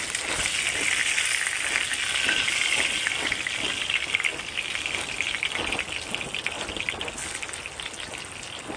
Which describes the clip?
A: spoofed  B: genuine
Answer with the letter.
B